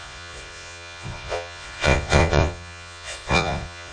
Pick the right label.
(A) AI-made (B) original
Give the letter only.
A